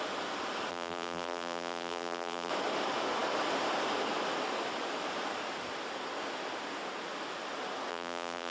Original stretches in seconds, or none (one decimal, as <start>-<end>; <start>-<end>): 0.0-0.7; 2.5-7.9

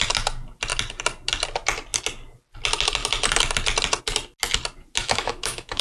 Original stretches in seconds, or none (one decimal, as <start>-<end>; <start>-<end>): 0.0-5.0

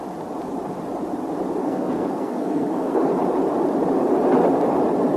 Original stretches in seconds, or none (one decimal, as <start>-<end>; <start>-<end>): 0.0-1.6; 3.1-5.2